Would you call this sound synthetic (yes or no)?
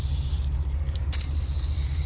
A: yes